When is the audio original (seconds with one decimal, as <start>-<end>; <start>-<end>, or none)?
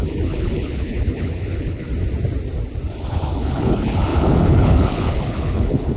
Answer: 1.9-3.0